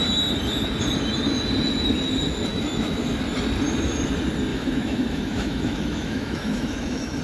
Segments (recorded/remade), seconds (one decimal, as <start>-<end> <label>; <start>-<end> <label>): 0.0-2.5 recorded; 2.5-3.2 remade; 3.2-4.5 recorded; 4.5-7.2 remade